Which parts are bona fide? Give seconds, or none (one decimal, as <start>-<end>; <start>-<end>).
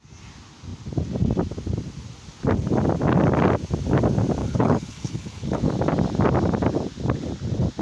0.0-4.4; 5.7-7.8